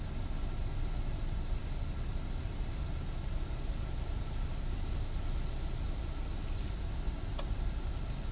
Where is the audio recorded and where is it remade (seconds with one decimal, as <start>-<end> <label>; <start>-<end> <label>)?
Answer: 0.0-8.3 recorded